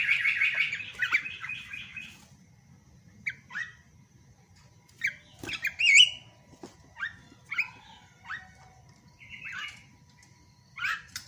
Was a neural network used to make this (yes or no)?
no